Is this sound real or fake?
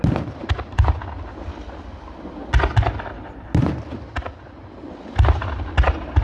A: real